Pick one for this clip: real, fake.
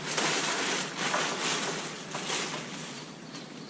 real